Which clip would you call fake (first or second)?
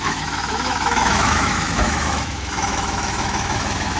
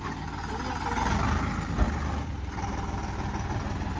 first